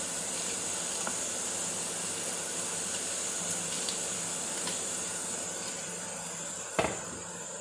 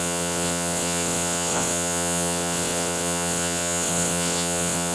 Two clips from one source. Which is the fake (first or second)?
second